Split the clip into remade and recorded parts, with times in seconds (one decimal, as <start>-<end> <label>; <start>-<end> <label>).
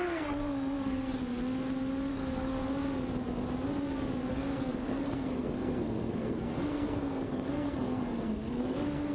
0.0-1.2 remade; 1.2-2.1 recorded; 2.1-2.6 remade; 2.6-4.3 recorded; 4.3-9.1 remade